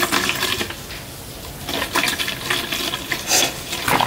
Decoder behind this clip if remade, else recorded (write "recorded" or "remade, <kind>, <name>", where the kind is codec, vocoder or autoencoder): recorded